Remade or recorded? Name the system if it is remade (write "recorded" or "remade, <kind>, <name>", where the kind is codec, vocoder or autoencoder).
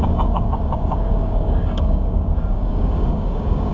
remade, codec, DAC